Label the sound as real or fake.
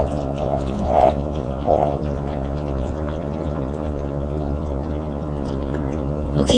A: fake